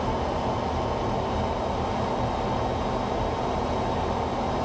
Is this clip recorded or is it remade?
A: recorded